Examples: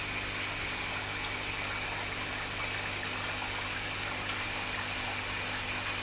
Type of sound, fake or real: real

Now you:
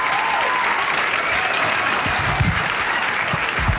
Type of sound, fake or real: real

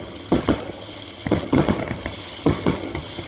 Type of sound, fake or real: fake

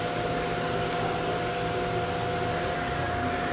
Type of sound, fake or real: real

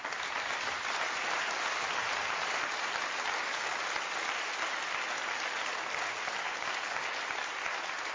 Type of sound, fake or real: real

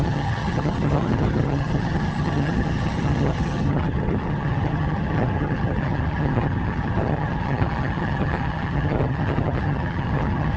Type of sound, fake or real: fake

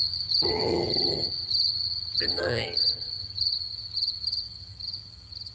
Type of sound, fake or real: fake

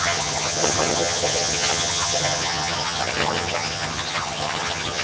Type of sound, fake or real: fake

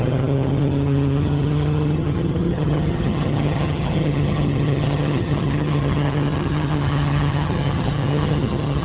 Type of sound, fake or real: fake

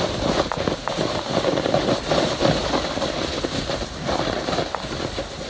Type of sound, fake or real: real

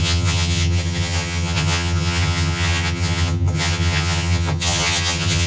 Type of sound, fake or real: fake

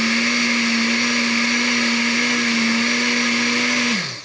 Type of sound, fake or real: real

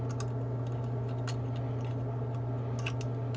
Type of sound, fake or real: real